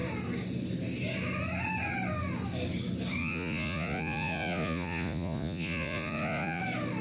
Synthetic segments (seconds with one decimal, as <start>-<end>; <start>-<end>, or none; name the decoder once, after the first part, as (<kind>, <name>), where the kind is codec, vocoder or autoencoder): 3.2-6.6 (vocoder, Vocos)